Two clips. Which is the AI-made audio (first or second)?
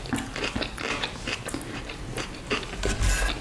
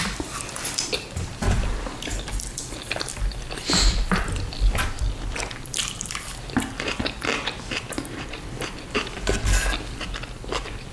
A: second